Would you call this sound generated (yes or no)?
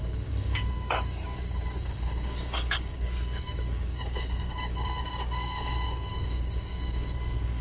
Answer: yes